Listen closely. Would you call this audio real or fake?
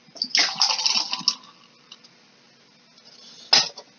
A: real